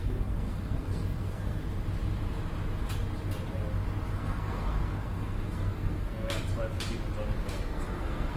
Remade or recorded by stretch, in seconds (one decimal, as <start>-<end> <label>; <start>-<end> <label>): 0.0-1.6 remade; 1.6-4.1 recorded; 4.1-6.4 remade; 6.4-7.4 recorded; 7.4-8.4 remade